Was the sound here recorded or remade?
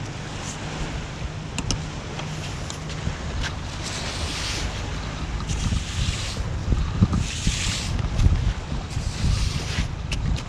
recorded